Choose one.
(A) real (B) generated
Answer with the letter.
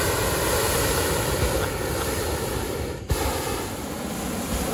A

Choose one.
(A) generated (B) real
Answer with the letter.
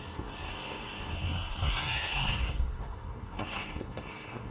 A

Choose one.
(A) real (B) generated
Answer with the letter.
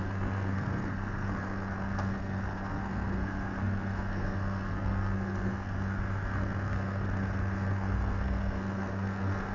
B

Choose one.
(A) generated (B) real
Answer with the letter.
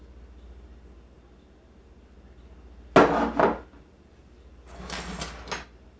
B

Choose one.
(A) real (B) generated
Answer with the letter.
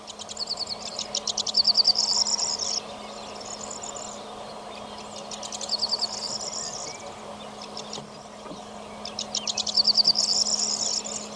A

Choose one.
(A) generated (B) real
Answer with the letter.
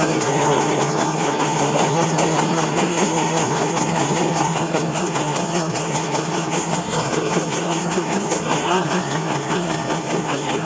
A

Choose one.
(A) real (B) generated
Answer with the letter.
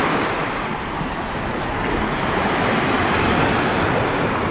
A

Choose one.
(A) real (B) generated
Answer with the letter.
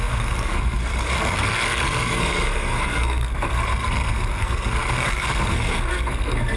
B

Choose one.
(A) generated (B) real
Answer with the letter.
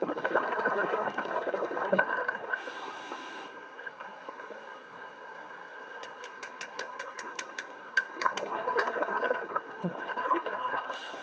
A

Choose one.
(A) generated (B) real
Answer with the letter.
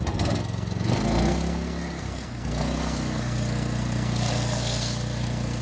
A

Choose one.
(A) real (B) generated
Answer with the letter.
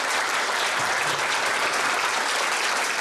A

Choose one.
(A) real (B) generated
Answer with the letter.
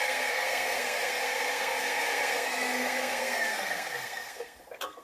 B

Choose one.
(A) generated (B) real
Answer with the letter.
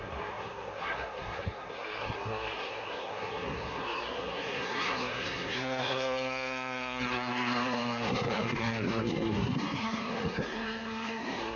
A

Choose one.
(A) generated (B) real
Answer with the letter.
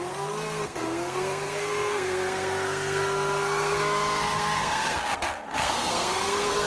A